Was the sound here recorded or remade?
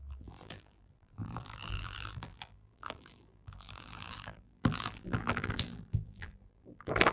remade